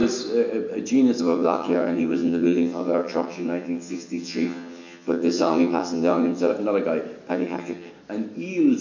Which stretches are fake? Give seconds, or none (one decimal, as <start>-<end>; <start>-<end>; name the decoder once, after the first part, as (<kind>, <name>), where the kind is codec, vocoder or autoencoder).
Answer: 1.2-6.5 (vocoder, HiFi-GAN); 7.3-7.9